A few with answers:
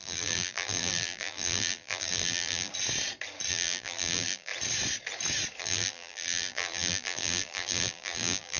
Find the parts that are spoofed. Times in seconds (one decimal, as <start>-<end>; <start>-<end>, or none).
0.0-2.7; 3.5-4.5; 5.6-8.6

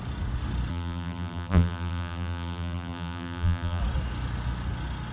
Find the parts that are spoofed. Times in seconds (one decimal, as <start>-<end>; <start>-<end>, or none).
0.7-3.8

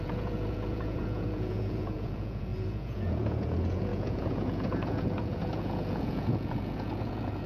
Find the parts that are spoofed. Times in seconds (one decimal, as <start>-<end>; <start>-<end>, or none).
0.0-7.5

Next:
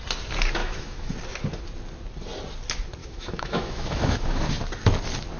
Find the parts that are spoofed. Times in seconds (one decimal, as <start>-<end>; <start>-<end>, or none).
0.6-1.1; 3.0-4.5